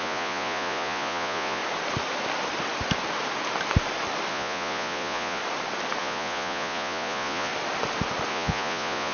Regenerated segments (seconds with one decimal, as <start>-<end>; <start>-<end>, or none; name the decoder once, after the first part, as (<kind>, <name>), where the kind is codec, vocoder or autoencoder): 0.0-1.6 (vocoder, Vocos); 4.3-5.4; 6.0-7.5; 8.3-9.1